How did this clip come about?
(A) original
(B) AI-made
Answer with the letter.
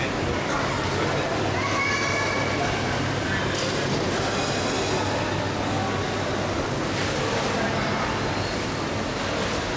A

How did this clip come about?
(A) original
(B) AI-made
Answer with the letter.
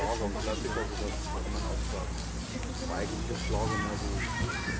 A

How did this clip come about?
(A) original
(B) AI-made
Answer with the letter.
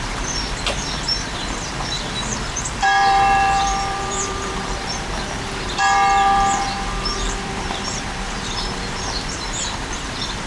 B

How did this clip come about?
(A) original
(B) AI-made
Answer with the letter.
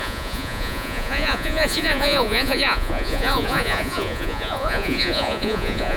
B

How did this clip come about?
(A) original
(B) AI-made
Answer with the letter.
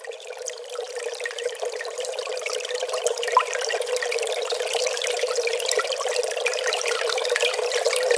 B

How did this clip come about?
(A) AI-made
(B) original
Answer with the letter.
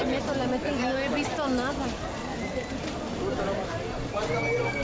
B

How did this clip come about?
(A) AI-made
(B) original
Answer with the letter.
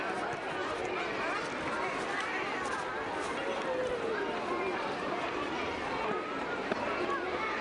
B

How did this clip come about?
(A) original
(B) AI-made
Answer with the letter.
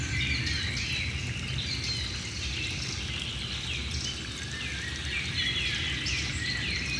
A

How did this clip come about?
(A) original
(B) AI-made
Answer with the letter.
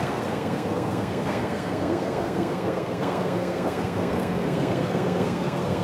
B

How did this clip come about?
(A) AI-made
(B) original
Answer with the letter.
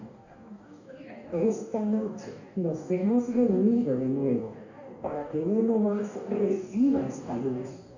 A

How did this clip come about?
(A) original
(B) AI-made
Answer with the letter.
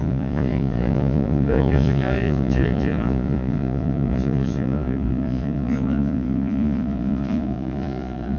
B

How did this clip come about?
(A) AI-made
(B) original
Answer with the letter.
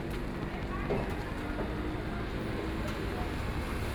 B